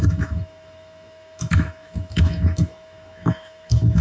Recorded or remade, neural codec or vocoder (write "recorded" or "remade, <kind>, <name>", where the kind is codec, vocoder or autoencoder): remade, autoencoder, DAC-VAE